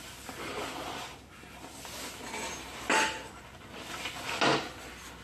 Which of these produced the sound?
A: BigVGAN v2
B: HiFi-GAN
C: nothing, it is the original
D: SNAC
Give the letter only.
C